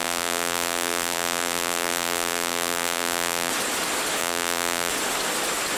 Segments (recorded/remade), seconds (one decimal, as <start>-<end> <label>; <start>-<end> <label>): 0.0-3.5 remade; 3.5-4.2 recorded; 4.2-4.9 remade; 4.9-5.8 recorded